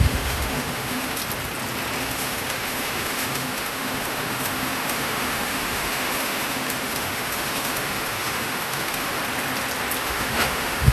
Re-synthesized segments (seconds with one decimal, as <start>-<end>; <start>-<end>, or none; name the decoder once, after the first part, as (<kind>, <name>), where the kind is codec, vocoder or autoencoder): 0.0-1.2 (autoencoder, DAC-VAE); 2.0-9.2; 10.0-10.9